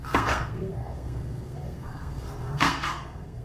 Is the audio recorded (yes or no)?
no